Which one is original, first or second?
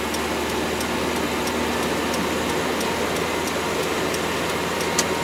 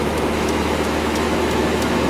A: first